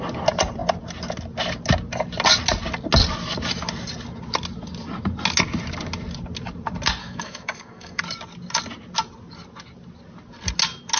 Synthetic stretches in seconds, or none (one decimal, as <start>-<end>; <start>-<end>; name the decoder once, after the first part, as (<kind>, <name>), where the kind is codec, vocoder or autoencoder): 7.0-8.0 (codec, DAC)